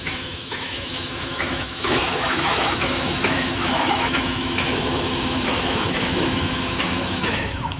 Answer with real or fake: fake